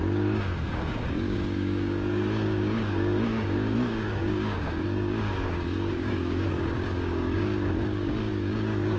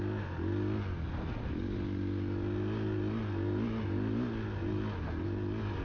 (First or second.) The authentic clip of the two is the second